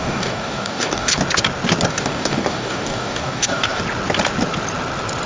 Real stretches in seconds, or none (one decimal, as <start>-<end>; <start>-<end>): 1.2-1.9; 3.8-5.3